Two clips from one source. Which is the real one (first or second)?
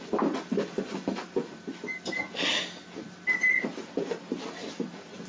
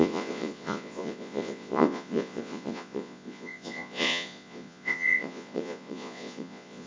first